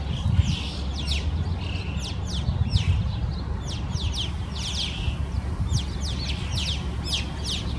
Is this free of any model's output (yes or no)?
yes